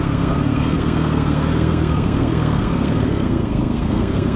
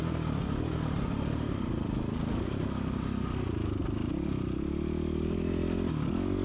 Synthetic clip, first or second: first